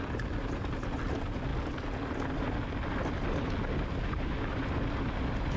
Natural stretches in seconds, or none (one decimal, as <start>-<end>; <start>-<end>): 0.0-5.6